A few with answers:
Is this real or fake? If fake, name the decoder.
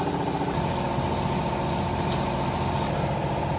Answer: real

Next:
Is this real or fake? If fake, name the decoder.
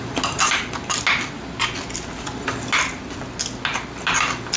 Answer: real